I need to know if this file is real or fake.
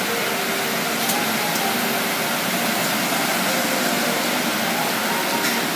real